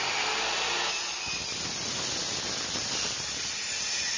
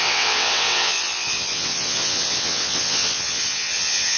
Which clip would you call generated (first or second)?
second